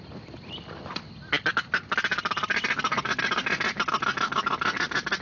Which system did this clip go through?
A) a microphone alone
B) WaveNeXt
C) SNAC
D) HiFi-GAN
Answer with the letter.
A